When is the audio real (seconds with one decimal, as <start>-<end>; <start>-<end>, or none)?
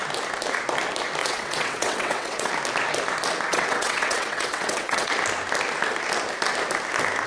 0.0-1.2; 2.5-3.5; 5.1-7.3